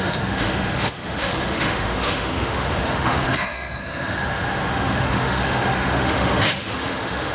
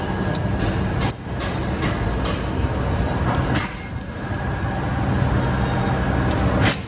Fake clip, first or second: first